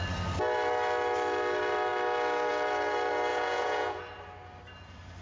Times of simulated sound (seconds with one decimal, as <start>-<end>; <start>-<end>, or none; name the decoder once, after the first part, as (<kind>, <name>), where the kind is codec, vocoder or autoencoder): 3.3-4.0 (vocoder, Vocos)